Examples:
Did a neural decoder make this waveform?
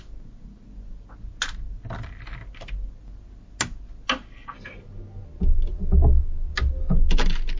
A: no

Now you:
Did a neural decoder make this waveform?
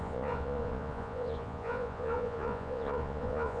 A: yes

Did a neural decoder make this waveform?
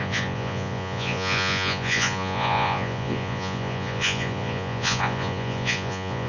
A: yes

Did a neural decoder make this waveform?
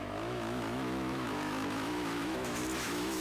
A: yes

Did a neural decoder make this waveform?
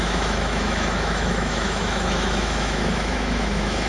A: yes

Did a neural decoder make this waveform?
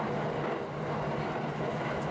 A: no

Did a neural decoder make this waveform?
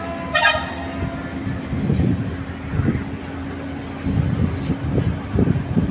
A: no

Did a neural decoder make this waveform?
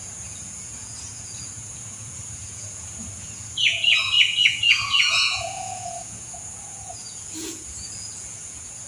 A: yes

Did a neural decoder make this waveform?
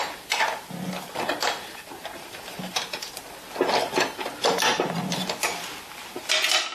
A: no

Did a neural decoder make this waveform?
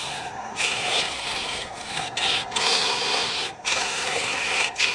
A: yes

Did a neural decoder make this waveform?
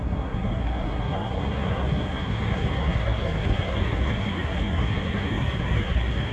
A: yes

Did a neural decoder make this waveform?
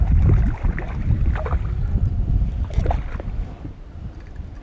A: no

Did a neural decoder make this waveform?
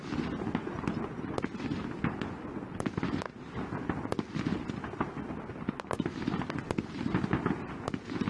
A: no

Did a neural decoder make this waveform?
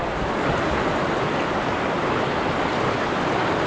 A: no